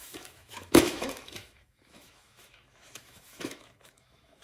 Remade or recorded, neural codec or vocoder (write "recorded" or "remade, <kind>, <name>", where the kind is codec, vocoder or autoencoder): remade, autoencoder, DAC-VAE